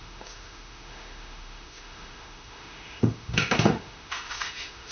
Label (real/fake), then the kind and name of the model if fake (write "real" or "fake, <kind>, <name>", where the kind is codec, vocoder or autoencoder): fake, autoencoder, DAC-VAE